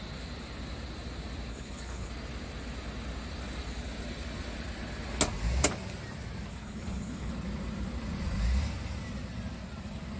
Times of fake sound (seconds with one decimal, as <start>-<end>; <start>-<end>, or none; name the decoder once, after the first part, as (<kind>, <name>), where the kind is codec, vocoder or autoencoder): 1.5-2.1 (codec, HILCodec); 6.5-7.3